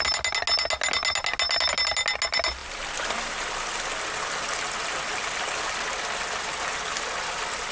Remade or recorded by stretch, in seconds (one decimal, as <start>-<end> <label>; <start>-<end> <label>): 0.0-7.7 recorded